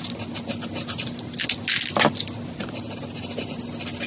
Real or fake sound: real